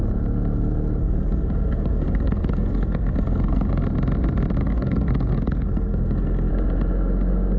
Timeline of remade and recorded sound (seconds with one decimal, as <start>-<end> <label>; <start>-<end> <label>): 0.0-1.0 recorded; 1.0-3.8 remade; 3.8-4.6 recorded; 4.6-6.5 remade; 6.5-7.6 recorded